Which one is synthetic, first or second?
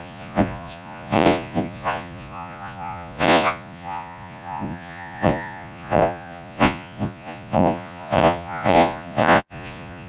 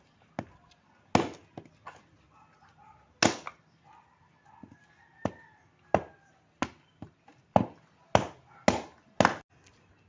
first